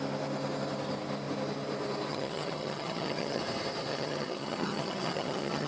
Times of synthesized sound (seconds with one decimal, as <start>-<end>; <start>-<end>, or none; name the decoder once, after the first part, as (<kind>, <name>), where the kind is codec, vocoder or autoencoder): 2.1-3.4 (vocoder, HiFi-GAN); 3.9-5.7